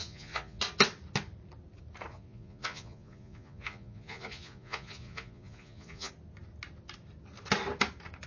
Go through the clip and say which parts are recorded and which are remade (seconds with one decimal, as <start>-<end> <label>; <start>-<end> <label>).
0.0-0.6 remade; 0.6-2.1 recorded; 2.1-6.1 remade; 6.1-8.3 recorded